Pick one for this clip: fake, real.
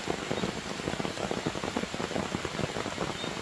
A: real